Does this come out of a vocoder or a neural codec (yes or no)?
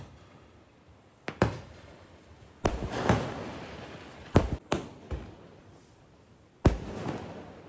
yes